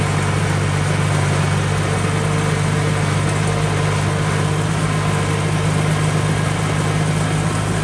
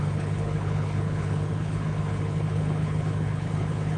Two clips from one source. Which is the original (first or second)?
first